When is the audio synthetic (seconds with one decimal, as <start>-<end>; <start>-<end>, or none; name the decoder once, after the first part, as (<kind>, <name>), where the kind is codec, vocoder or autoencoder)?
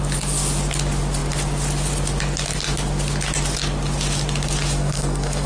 4.8-5.5 (codec, SNAC)